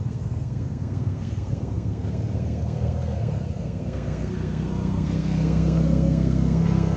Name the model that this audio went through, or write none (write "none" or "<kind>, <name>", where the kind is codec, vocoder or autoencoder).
codec, SNAC